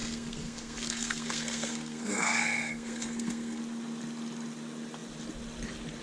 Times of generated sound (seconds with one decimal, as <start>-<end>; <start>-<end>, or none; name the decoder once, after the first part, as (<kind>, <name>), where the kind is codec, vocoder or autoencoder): 0.0-3.6 (codec, SNAC)